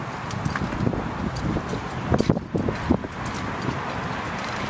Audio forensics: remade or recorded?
recorded